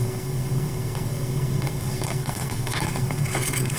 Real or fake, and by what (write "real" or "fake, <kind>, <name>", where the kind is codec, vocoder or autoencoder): fake, codec, SNAC